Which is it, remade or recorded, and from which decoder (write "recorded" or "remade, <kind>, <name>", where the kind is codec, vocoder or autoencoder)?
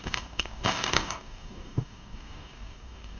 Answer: remade, codec, DAC